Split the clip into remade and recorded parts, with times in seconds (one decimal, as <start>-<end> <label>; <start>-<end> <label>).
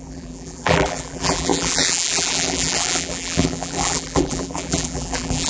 0.0-5.5 remade